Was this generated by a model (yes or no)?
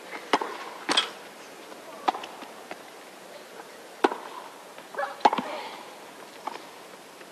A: no